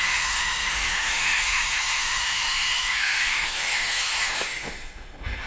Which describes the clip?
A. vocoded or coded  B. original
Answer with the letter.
A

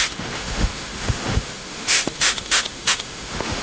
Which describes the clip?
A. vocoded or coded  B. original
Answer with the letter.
A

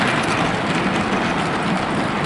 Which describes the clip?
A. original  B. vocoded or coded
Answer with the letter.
A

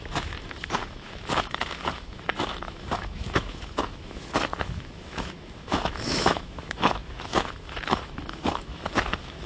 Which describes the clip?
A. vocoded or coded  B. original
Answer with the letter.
A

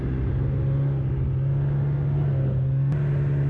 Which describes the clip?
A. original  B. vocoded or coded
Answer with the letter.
A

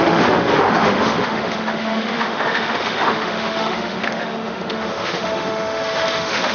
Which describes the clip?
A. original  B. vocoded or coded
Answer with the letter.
B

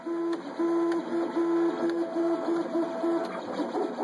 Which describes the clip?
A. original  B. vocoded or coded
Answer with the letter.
A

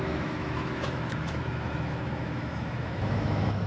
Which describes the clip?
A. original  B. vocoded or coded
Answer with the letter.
B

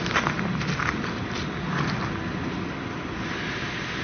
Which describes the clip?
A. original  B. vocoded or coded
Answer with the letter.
A